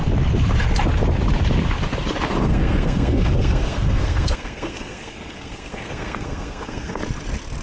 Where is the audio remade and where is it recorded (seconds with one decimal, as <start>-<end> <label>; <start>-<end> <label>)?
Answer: 0.0-2.4 recorded; 2.4-7.0 remade; 7.0-7.6 recorded